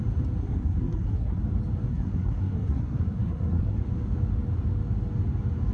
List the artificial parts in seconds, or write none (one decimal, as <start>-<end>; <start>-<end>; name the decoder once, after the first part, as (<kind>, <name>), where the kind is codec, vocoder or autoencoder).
0.4-1.4 (codec, SNAC); 1.9-3.8